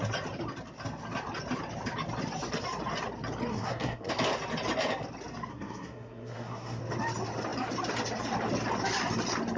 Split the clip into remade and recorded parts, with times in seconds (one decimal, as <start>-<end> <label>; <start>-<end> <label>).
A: 0.0-3.5 recorded; 3.5-4.1 remade; 4.1-5.5 recorded; 5.5-6.8 remade; 6.8-9.6 recorded